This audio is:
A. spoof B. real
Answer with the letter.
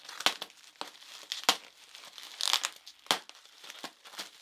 B